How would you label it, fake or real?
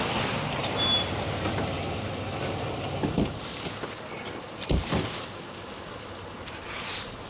real